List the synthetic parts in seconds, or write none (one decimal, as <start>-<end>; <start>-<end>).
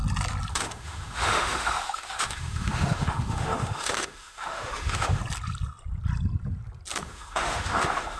0.5-5.2; 7.0-8.2